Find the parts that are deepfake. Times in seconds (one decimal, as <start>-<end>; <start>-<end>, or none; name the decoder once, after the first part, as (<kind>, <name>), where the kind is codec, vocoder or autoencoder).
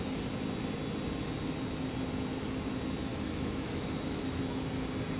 3.1-4.4 (autoencoder, DAC-VAE)